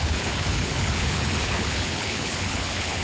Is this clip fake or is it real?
fake